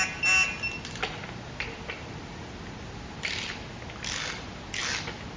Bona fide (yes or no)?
yes